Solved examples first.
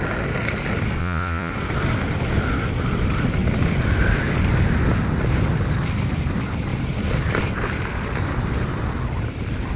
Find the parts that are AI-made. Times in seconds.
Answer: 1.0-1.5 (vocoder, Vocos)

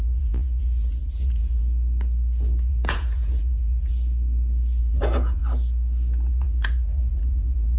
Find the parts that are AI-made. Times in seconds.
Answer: 0.0-1.6 (vocoder, Vocos); 2.7-3.9; 4.8-5.4; 6.3-7.8

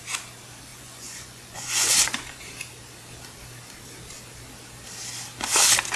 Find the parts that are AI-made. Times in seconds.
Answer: 0.7-2.4 (vocoder, Vocos)

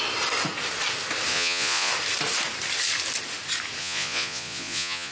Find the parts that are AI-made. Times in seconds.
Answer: 1.3-1.9 (vocoder, Vocos); 3.8-5.1

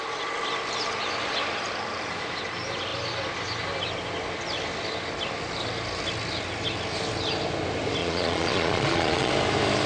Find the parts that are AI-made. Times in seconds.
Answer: 8.0-9.3 (vocoder, Vocos)

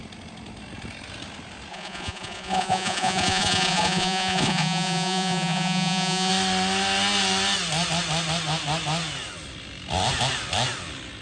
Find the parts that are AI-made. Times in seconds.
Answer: 1.7-6.3 (vocoder, Vocos)